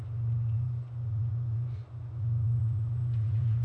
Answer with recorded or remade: remade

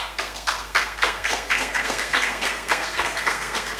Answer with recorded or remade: remade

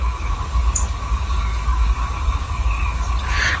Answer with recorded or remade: remade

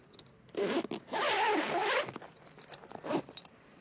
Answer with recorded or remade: recorded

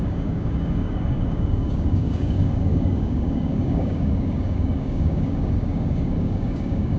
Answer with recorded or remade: remade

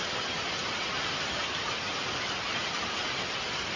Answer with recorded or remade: recorded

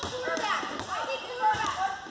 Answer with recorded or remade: recorded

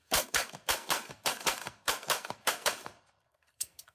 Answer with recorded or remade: remade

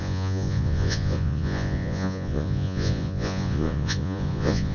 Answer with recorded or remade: remade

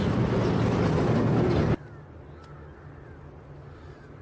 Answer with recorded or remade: recorded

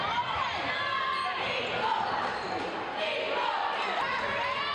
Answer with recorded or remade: recorded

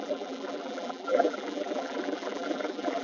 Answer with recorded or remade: remade